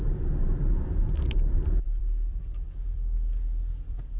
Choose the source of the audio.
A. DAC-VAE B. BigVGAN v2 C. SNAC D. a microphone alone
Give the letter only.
B